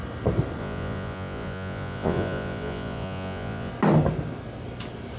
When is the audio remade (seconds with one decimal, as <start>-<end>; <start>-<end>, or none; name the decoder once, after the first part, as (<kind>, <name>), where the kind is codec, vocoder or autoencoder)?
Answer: 0.6-3.7 (vocoder, Vocos)